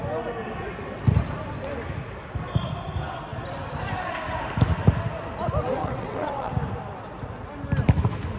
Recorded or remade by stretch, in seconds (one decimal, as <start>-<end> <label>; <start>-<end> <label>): 0.0-5.8 recorded; 5.8-6.5 remade; 6.5-8.4 recorded